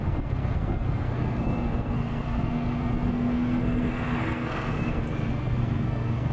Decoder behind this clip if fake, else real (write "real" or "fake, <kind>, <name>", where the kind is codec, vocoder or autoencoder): fake, codec, SNAC